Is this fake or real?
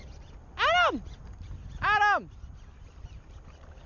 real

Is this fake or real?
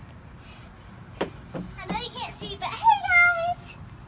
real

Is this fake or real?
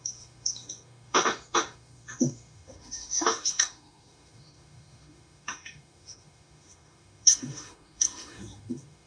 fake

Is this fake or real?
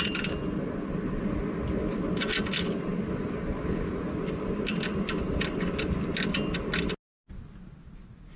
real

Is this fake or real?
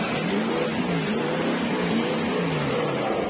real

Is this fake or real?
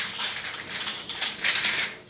fake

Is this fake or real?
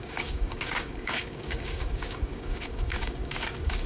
fake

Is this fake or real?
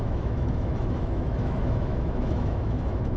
fake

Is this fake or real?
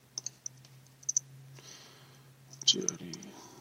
real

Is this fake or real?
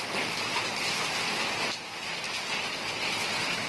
real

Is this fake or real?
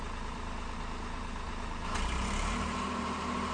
fake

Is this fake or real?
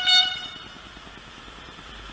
fake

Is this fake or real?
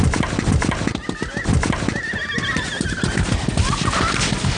real